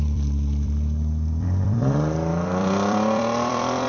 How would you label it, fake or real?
fake